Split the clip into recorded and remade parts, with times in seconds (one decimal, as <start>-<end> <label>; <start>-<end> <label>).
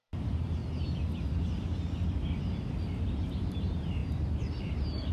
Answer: 0.0-0.6 remade; 0.6-3.2 recorded; 3.2-5.1 remade